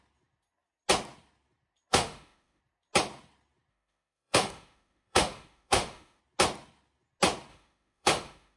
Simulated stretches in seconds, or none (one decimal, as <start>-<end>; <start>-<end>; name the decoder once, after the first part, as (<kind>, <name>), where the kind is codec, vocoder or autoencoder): 1.9-2.6 (autoencoder, DAC-VAE); 3.7-6.2; 7.5-8.6